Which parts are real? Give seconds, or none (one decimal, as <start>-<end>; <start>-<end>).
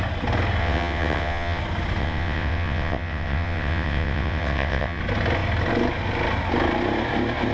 0.0-0.6; 1.6-2.0; 5.0-7.5